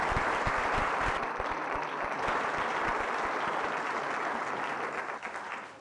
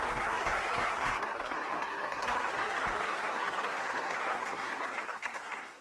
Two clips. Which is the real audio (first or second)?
first